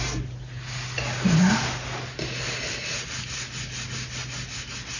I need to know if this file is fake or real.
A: real